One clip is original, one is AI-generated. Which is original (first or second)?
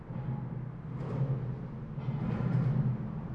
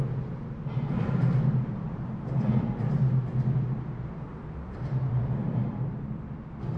first